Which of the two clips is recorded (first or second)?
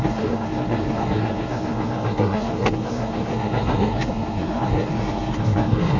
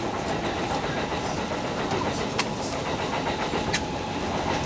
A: second